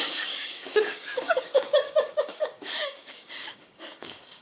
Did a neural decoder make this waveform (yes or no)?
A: yes